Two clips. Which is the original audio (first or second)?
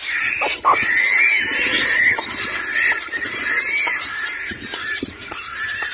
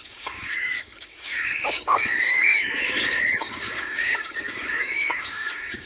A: first